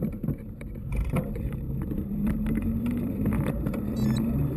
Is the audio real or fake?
fake